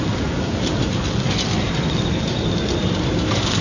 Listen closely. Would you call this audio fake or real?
real